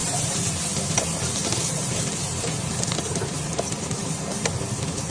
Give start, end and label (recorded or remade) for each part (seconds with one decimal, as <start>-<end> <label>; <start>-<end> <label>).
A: 0.0-0.5 remade; 0.5-1.4 recorded; 1.4-4.5 remade; 4.5-5.1 recorded